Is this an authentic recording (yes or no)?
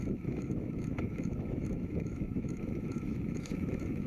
no